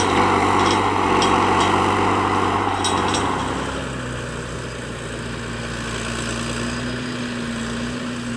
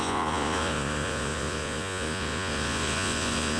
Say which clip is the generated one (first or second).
second